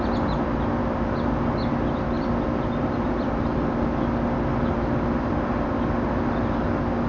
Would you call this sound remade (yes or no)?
no